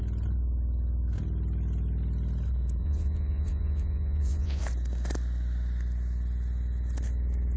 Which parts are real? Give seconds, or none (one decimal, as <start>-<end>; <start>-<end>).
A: 0.0-2.8; 4.6-7.6